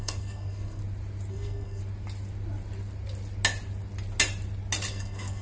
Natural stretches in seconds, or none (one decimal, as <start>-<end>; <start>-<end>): 0.8-1.3; 1.8-4.9